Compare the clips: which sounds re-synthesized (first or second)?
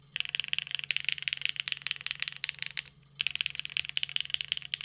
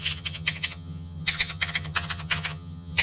second